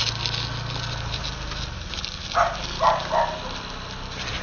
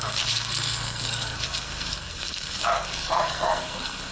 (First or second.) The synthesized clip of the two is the second